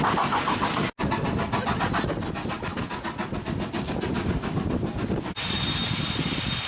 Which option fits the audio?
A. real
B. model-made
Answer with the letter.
A